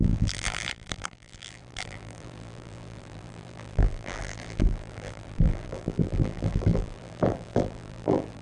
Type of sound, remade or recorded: remade